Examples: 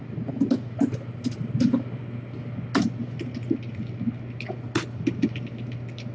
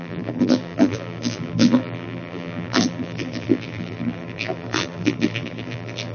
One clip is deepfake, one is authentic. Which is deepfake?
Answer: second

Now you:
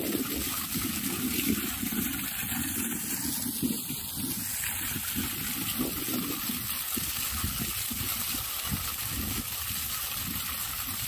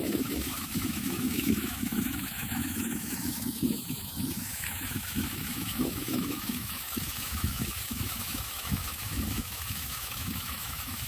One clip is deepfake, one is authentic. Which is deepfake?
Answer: second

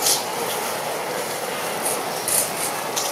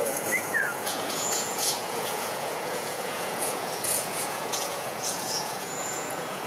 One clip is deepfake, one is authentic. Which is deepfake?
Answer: second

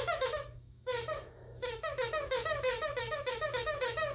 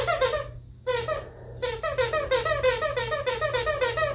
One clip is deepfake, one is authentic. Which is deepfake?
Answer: first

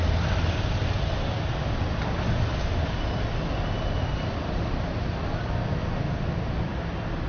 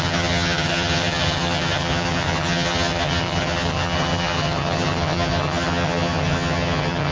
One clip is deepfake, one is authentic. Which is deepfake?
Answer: second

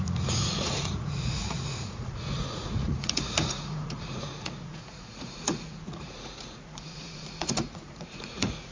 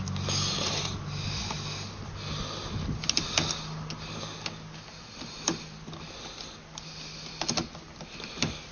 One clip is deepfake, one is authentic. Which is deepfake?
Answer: first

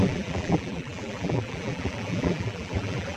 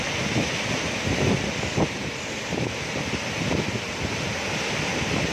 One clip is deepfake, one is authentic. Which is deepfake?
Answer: first